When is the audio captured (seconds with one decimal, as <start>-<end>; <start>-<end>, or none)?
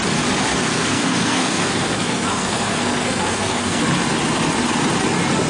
0.0-0.5; 3.8-5.5